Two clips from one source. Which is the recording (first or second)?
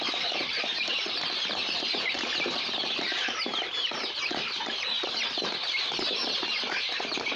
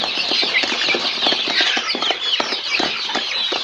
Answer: second